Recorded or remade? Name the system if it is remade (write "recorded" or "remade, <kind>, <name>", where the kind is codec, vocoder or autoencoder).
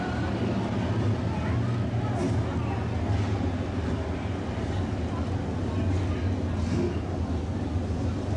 recorded